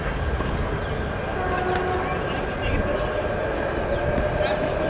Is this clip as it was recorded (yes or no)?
yes